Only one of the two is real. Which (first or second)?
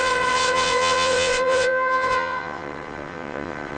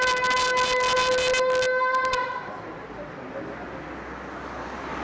second